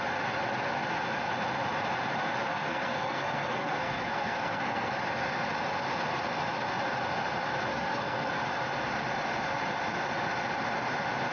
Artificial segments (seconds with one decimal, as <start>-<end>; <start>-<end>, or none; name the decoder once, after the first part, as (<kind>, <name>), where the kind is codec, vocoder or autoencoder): 2.5-5.0 (codec, SNAC); 7.7-8.3